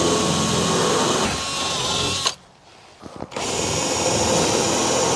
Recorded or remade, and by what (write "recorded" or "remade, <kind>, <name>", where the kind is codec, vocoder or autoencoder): recorded